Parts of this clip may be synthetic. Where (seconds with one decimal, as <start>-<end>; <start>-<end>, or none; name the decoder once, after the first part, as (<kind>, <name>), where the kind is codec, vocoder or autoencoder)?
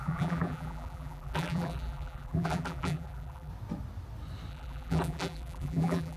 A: 0.0-3.5 (vocoder, BigVGAN v2); 4.5-6.2